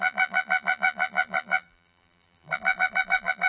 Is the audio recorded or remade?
remade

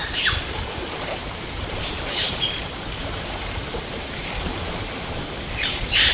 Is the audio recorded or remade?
remade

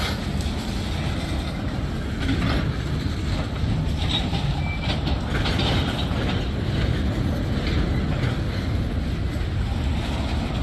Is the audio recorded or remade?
recorded